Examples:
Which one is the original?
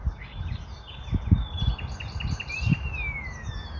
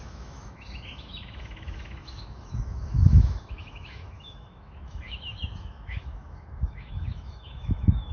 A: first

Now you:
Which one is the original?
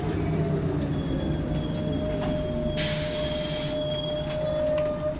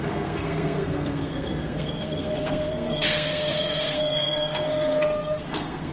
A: first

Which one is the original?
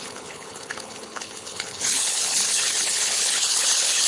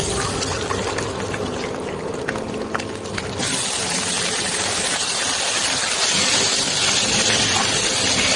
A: second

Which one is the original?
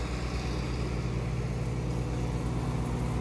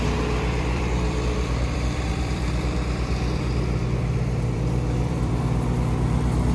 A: first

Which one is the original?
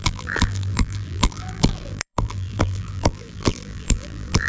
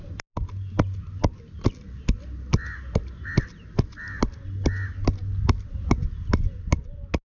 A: second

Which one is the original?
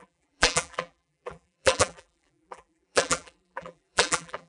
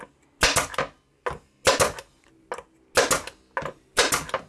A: second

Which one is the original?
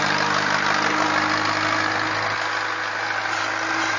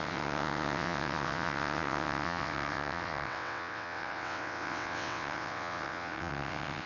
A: first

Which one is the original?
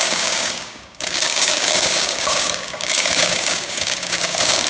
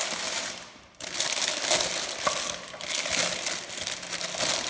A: second